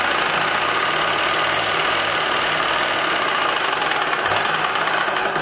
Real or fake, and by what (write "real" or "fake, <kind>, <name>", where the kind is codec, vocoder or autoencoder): real